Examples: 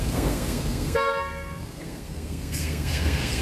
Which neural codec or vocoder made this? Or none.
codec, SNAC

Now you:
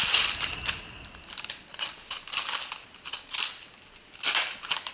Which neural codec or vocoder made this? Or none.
none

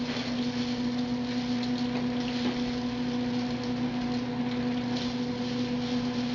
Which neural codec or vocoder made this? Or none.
none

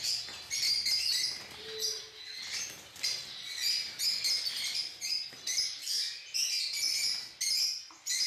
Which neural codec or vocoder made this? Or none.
none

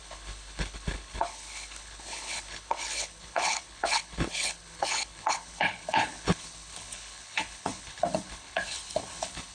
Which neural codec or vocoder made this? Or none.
codec, HILCodec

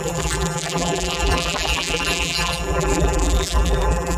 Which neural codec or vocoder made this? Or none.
vocoder, BigVGAN v2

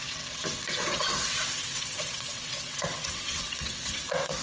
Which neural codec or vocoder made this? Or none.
vocoder, WaveNeXt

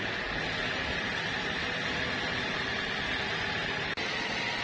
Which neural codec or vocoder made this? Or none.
none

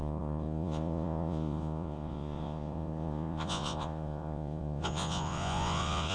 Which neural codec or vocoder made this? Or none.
vocoder, Vocos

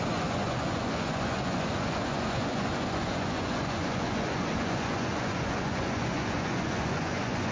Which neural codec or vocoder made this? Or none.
vocoder, Vocos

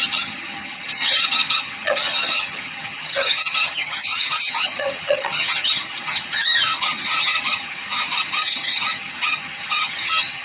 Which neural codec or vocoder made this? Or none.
vocoder, HiFi-GAN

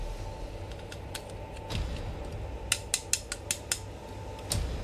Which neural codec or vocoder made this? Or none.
none